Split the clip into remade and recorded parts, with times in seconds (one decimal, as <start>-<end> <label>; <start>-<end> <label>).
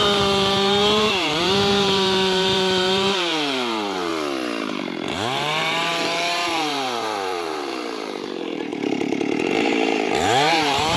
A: 0.0-4.1 remade; 4.1-4.6 recorded; 4.6-11.0 remade